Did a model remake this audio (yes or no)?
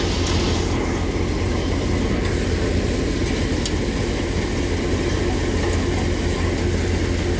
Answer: no